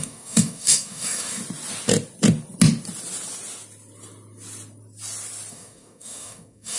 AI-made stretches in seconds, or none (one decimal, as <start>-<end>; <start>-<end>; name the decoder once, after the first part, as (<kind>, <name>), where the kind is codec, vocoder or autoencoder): 0.0-1.4 (codec, DAC); 5.5-6.8